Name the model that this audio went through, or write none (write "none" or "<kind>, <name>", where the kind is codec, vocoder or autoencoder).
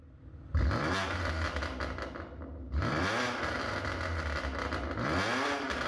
none